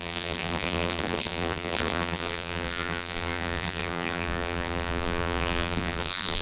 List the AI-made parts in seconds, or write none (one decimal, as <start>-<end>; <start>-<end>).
0.0-6.4